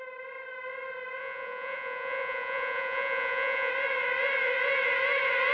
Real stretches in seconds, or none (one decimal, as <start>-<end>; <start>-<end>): 0.0-1.2; 3.7-5.5